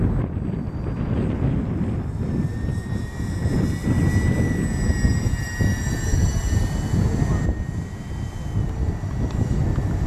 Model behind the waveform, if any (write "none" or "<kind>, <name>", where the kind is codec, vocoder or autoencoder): none